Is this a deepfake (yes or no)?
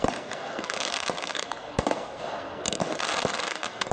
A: yes